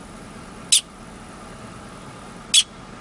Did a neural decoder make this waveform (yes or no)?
no